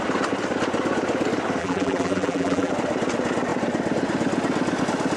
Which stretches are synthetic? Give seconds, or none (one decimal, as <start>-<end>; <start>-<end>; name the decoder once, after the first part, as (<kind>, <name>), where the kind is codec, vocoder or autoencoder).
1.6-2.7 (vocoder, BigVGAN v2)